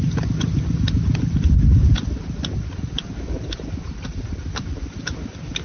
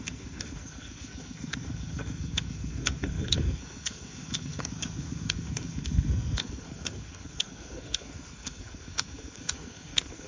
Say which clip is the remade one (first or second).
second